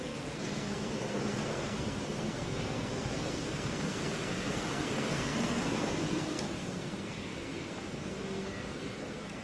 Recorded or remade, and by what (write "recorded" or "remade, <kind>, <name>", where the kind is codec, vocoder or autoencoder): remade, codec, SNAC